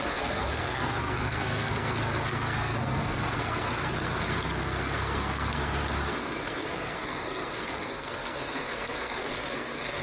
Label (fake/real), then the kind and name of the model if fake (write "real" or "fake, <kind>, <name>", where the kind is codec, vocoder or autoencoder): fake, codec, SNAC